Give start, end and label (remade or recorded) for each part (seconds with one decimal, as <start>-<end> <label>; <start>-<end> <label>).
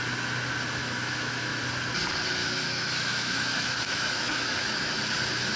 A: 0.0-0.8 recorded; 0.8-1.6 remade; 1.6-2.4 recorded; 2.4-5.0 remade; 5.0-5.6 recorded